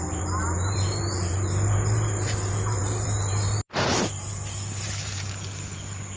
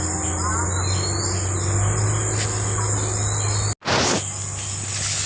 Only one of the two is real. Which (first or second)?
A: second